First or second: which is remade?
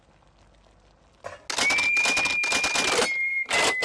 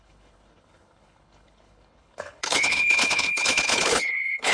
second